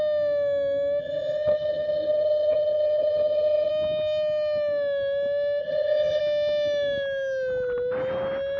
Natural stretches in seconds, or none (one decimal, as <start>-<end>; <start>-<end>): 0.0-1.0; 3.7-5.6; 6.2-8.6